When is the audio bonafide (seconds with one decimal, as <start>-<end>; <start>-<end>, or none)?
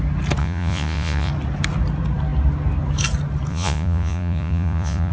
0.0-0.4; 1.3-3.5